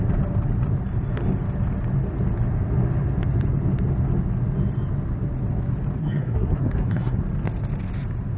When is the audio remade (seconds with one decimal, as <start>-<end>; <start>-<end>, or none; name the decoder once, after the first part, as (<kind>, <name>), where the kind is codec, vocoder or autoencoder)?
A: 6.0-7.2 (codec, SNAC)